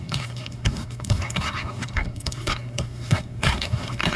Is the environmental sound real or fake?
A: fake